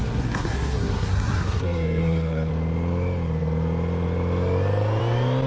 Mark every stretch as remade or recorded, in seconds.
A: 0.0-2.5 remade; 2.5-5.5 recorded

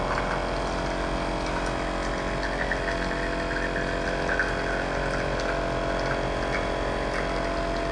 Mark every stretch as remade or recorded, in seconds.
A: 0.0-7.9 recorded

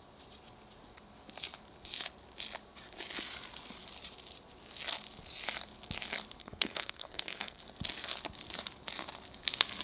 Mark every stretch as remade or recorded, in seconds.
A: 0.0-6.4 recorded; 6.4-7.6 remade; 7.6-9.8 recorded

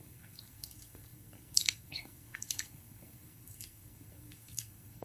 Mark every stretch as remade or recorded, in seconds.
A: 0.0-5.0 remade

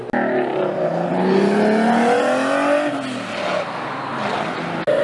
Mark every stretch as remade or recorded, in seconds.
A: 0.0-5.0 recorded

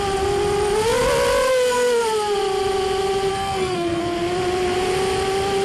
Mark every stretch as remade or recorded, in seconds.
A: 0.0-3.3 recorded; 3.3-4.0 remade; 4.0-5.6 recorded

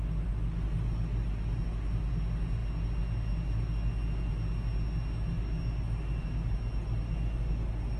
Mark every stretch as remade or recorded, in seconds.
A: 0.0-8.0 recorded